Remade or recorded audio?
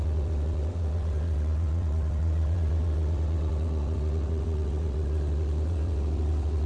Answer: remade